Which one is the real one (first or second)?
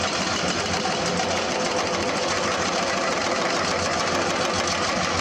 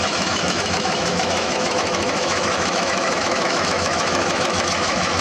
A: first